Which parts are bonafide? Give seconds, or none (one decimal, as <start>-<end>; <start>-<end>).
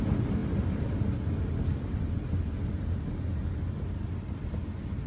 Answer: 0.0-5.1